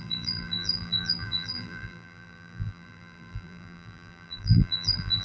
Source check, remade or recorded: remade